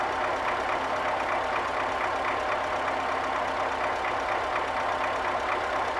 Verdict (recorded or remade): recorded